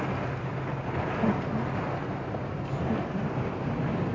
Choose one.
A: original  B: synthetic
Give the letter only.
A